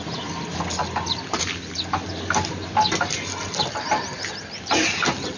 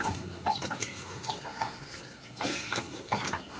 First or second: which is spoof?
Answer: second